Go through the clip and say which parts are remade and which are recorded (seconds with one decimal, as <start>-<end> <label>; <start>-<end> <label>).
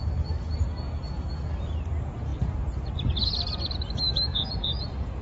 0.0-4.3 recorded; 4.3-5.2 remade